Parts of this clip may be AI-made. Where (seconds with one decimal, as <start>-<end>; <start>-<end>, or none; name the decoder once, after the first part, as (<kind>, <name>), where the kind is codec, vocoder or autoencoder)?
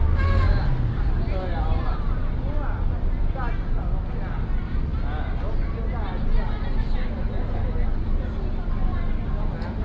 none